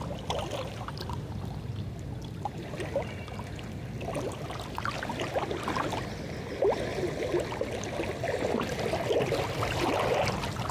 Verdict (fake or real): real